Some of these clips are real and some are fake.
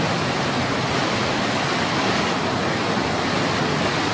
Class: real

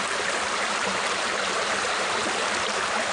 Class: fake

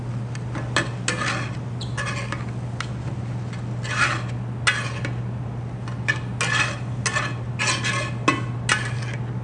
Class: real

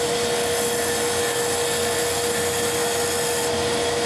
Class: real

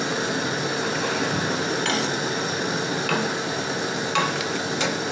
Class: real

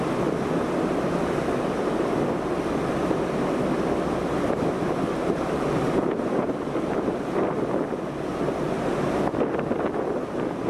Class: real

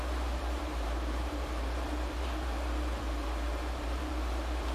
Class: fake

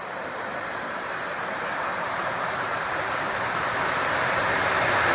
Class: fake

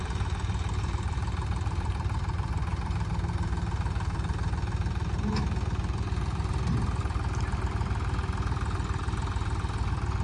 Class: real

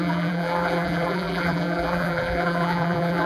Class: fake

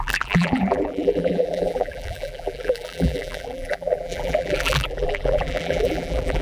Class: fake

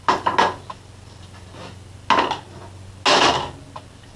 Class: real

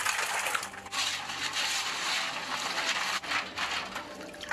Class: real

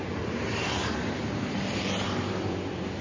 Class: fake